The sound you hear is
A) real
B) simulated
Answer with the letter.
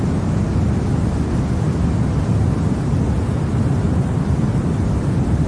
A